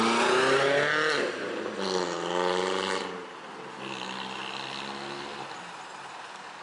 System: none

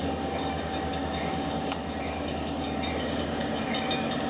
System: codec, DAC